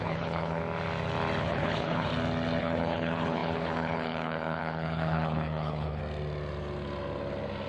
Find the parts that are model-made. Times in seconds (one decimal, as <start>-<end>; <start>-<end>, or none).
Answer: 0.0-0.6; 1.4-2.1; 2.6-6.0